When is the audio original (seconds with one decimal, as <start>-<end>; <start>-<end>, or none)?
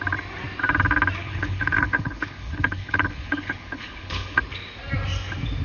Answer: 0.0-1.2; 4.4-5.6